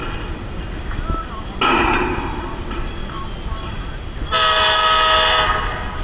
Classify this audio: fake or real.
real